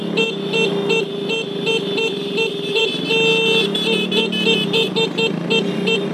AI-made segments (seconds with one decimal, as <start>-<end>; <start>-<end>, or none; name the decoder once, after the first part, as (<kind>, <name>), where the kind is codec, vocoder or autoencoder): none